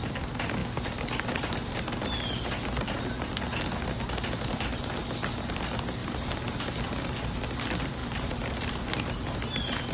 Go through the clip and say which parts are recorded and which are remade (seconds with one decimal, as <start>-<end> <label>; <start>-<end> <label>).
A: 0.0-6.0 recorded; 6.0-6.5 remade; 6.5-8.0 recorded; 8.0-8.7 remade; 8.7-9.9 recorded